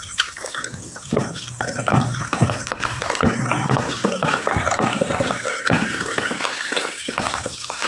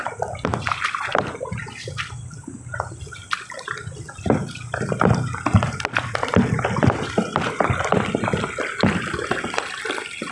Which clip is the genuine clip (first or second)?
second